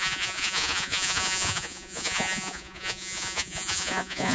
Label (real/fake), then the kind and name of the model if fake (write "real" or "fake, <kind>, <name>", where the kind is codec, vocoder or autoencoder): fake, vocoder, Vocos